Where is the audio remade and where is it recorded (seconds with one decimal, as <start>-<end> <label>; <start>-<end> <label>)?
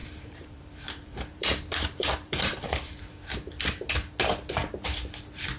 0.0-3.2 remade; 3.2-5.6 recorded